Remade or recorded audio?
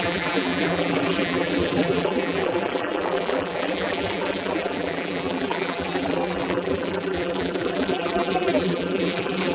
remade